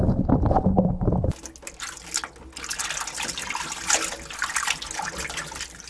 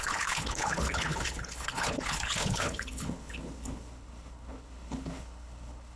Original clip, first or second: first